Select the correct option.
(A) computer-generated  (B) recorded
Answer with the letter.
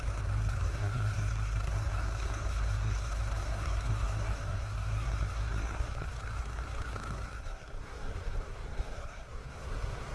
A